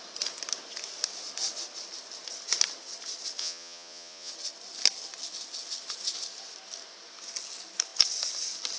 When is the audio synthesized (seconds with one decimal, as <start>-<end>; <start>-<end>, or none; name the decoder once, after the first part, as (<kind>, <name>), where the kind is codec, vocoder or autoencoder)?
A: 3.4-4.3 (vocoder, Vocos)